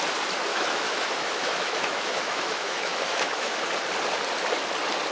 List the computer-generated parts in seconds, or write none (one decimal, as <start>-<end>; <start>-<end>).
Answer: 0.5-3.6